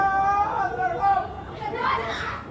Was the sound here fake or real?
real